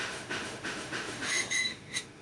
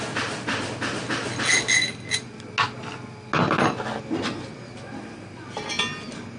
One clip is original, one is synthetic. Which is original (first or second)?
second